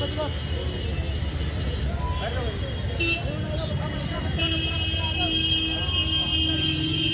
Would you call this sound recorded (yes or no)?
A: yes